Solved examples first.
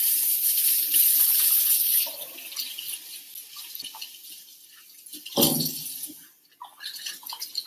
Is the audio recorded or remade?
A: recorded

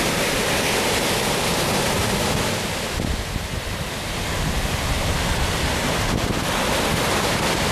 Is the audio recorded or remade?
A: recorded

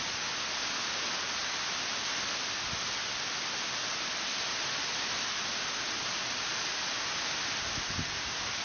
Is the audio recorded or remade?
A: recorded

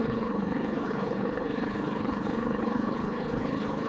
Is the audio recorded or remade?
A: remade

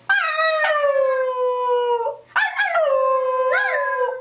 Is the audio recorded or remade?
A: recorded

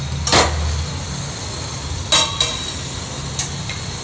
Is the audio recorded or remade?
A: recorded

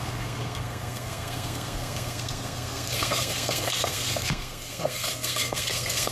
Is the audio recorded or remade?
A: remade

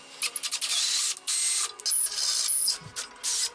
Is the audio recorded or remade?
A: recorded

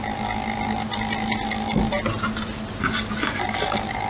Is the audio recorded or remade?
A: recorded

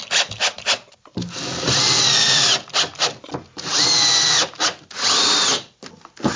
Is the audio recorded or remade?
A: recorded